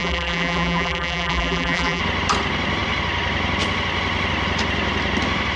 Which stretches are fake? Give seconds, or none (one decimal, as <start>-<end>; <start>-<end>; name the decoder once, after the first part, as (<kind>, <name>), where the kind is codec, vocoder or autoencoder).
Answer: 0.0-2.0 (vocoder, BigVGAN v2)